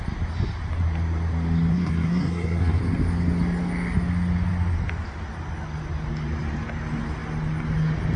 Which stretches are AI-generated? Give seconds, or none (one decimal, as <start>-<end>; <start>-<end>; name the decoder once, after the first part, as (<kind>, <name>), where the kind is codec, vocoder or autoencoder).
1.7-2.8 (codec, SNAC)